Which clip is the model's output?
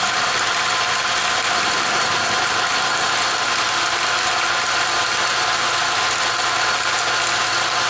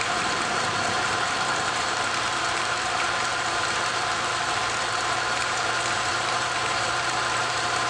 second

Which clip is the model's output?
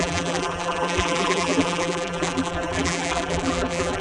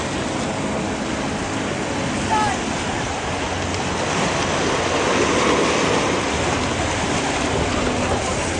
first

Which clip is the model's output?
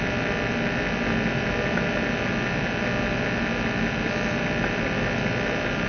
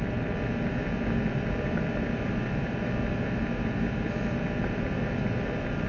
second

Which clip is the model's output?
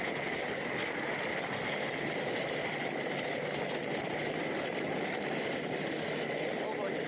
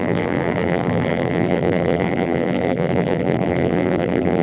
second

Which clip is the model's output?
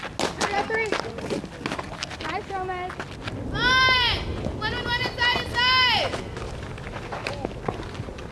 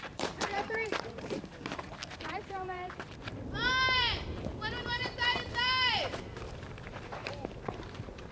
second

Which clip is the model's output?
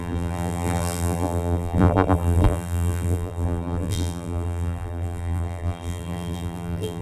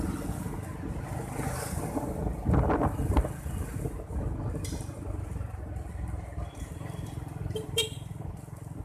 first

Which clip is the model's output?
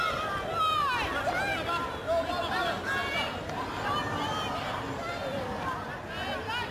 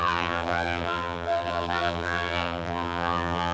second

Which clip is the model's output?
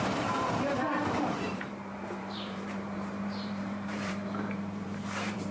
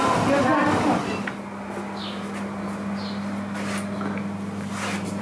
first